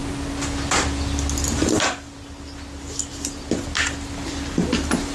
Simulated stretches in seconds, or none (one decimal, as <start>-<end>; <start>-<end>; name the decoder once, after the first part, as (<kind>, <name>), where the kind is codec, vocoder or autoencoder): none